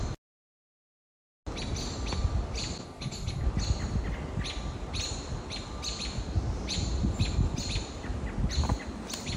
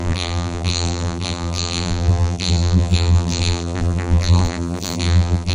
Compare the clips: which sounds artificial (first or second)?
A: second